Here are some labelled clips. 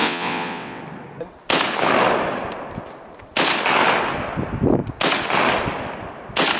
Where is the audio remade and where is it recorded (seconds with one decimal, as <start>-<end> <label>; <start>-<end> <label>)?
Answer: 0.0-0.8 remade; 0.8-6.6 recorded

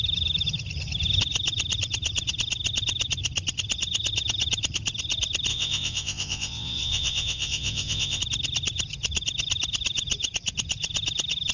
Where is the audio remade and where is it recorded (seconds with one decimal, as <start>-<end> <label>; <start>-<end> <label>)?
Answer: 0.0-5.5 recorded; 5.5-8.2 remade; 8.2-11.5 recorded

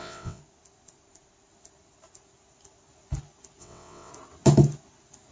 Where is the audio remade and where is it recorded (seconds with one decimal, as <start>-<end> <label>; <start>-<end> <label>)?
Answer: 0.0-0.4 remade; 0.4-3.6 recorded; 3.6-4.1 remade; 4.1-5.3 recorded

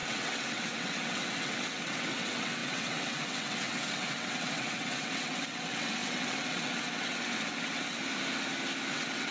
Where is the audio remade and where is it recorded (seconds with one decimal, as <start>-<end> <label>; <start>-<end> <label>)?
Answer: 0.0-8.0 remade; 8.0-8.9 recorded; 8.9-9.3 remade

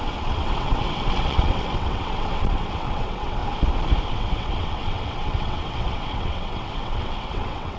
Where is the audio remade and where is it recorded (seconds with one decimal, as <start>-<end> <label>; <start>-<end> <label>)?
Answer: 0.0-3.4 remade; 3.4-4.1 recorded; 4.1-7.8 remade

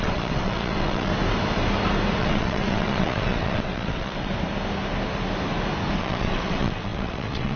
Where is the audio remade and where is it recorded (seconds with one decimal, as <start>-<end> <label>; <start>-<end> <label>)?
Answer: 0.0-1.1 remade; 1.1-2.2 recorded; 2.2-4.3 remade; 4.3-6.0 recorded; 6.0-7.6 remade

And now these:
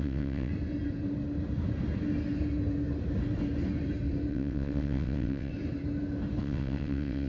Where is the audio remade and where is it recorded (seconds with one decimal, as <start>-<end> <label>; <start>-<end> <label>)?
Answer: 0.0-0.5 remade; 0.5-4.3 recorded; 4.3-5.5 remade; 5.5-6.4 recorded; 6.4-7.3 remade

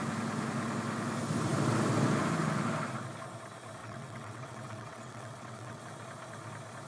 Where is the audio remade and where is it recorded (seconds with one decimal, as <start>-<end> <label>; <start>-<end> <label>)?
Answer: 0.0-3.8 recorded; 3.8-5.8 remade; 5.8-6.9 recorded